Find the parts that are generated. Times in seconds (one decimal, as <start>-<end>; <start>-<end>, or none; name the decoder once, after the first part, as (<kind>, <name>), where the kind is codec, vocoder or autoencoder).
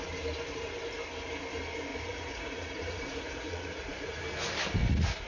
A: 1.9-4.2 (vocoder, Vocos); 4.8-5.3